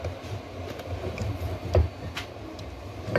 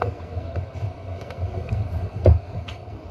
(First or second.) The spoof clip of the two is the second